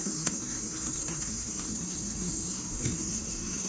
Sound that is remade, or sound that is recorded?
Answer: remade